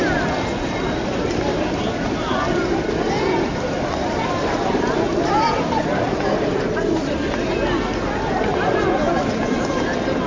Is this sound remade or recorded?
recorded